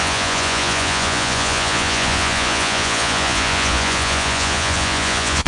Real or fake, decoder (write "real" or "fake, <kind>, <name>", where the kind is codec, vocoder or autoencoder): fake, vocoder, Vocos